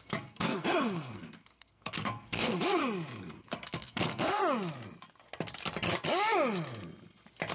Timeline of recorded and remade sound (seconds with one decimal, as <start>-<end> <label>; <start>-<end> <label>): 0.0-2.8 remade; 2.8-3.3 recorded; 3.3-4.4 remade; 4.4-7.5 recorded